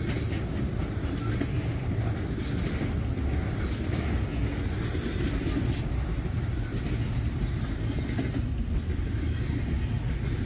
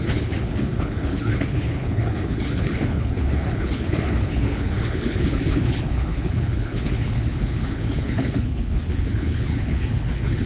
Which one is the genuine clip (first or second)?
first